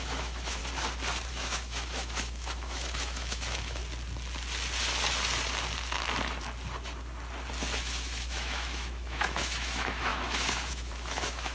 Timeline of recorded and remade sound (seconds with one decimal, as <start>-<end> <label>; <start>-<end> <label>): 0.0-0.6 remade; 0.6-1.3 recorded; 1.3-3.8 remade; 3.8-7.8 recorded; 7.8-11.5 remade